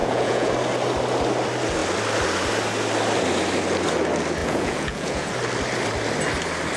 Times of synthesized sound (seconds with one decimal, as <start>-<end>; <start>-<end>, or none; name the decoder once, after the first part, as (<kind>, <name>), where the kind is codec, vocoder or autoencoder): 0.0-0.5 (vocoder, Vocos); 4.4-5.3